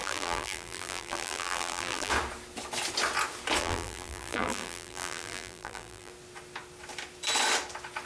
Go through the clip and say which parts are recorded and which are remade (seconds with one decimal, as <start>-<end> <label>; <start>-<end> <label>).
0.0-2.1 remade; 2.1-3.6 recorded; 3.6-6.1 remade; 6.1-8.1 recorded